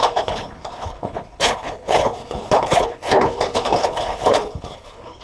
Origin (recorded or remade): remade